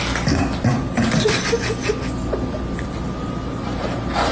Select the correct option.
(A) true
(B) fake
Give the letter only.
A